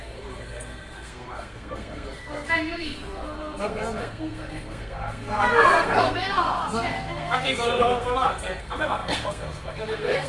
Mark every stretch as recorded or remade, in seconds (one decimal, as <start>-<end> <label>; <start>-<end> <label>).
0.0-10.3 remade